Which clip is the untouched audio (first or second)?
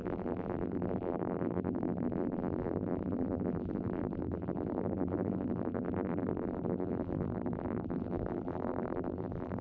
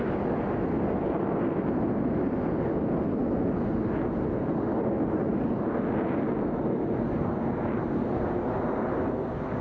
second